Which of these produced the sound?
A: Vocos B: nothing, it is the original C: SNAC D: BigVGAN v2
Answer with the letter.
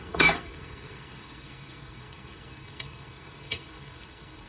C